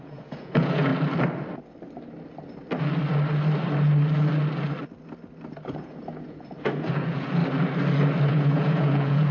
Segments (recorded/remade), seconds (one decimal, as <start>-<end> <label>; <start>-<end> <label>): 0.0-0.9 remade; 0.9-5.6 recorded; 5.6-7.4 remade; 7.4-8.3 recorded; 8.3-9.3 remade